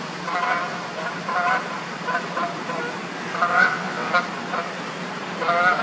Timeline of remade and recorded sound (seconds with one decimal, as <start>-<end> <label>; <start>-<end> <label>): 0.0-3.5 recorded; 3.5-4.1 remade; 4.1-5.8 recorded